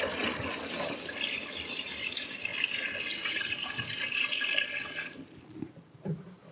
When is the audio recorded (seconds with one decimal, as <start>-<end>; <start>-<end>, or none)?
2.5-3.2; 4.3-5.9